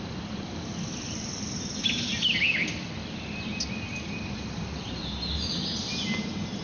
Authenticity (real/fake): real